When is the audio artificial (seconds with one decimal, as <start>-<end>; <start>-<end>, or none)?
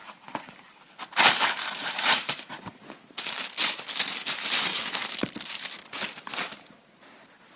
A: 0.0-0.5; 1.8-2.7